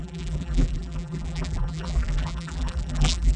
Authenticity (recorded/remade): remade